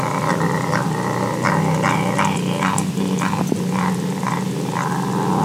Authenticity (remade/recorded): recorded